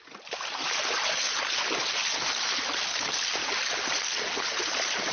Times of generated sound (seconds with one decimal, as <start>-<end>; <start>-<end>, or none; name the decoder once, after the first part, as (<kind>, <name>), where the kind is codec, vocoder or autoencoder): none